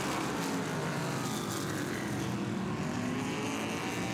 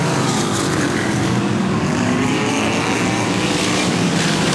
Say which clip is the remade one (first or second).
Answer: second